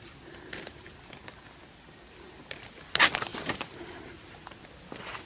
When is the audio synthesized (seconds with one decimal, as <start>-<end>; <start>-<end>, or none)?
3.3-4.1